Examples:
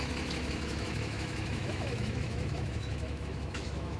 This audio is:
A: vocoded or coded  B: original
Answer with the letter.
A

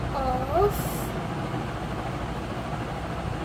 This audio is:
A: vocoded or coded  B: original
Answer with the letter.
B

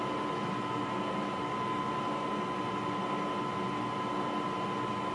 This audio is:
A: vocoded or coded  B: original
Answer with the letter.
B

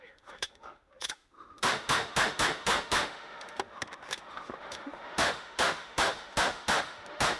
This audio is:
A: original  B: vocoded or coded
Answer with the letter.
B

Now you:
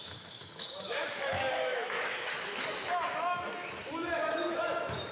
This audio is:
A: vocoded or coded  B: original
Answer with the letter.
A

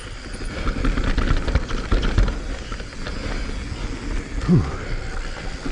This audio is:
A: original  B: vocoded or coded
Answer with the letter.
A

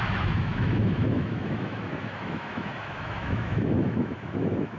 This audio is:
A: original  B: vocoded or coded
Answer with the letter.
B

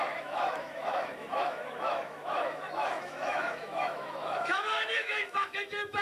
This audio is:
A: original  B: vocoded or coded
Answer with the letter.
B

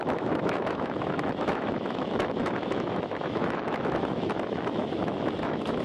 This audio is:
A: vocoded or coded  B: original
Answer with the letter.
A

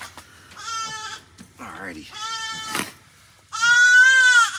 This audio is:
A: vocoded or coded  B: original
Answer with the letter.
B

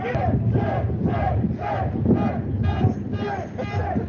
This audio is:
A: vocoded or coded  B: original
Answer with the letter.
B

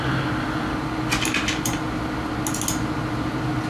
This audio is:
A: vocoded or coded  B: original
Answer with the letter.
B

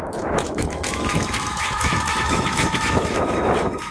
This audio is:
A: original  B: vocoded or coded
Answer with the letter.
B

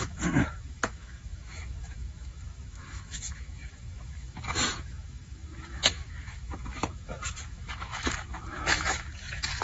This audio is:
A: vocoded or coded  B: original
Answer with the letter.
A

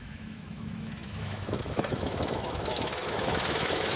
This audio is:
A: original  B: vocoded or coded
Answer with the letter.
B